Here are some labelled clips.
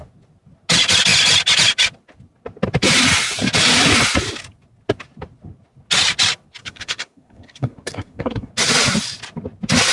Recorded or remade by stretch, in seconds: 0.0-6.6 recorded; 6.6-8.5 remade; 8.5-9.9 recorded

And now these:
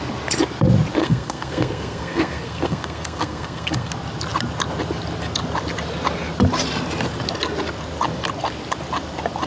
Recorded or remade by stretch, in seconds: 0.0-1.0 recorded; 1.0-3.9 remade; 3.9-9.5 recorded

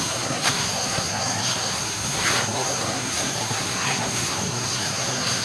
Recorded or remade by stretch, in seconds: 0.0-5.4 remade

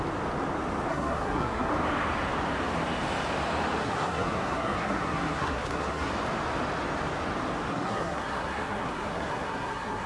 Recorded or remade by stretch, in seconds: 0.0-0.9 recorded; 0.9-1.7 remade; 1.7-3.8 recorded; 3.8-6.1 remade; 6.1-7.7 recorded; 7.7-10.1 remade

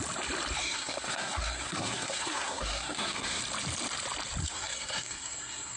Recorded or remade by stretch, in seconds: 0.0-0.6 recorded; 0.6-3.4 remade; 3.4-4.4 recorded; 4.4-5.8 remade

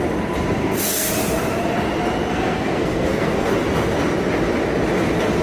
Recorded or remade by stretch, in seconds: 0.0-0.6 recorded; 0.6-1.1 remade; 1.1-2.3 recorded; 2.3-3.5 remade; 3.5-5.4 recorded

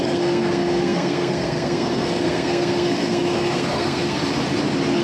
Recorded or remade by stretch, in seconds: 0.0-4.2 remade; 4.2-5.0 recorded